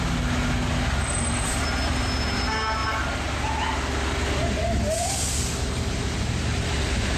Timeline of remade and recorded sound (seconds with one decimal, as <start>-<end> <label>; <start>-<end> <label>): 0.0-0.9 recorded; 0.9-2.8 remade; 2.8-4.4 recorded; 4.4-7.2 remade